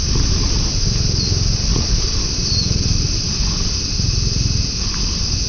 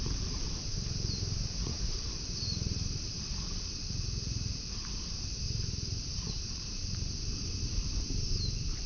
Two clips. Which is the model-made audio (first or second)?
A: second